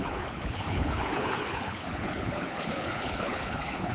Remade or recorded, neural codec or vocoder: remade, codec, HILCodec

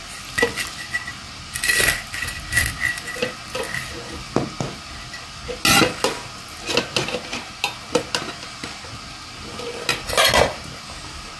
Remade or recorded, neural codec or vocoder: recorded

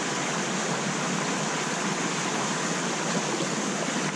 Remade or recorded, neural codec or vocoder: recorded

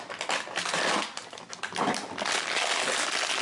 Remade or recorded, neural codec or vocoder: recorded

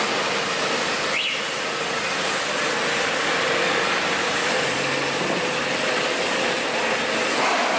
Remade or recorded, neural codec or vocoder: recorded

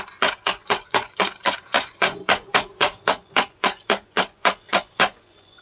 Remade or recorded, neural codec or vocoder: remade, vocoder, Vocos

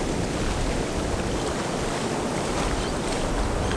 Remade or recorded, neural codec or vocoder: recorded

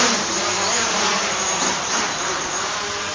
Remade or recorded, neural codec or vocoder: remade, vocoder, BigVGAN v2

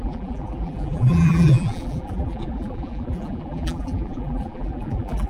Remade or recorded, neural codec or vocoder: remade, vocoder, BigVGAN v2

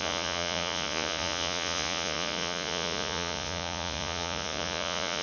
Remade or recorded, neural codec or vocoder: remade, vocoder, Vocos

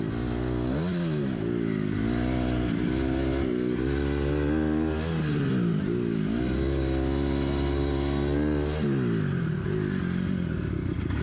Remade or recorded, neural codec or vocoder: recorded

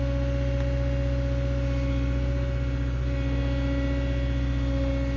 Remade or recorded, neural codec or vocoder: recorded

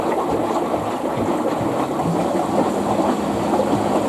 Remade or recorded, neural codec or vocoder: recorded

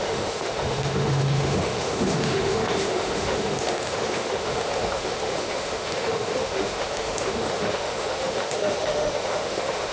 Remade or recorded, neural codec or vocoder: remade, autoencoder, DAC-VAE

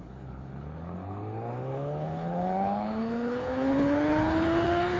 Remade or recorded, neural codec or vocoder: remade, codec, HILCodec